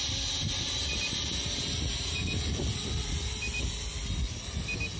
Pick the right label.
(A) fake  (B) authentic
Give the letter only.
B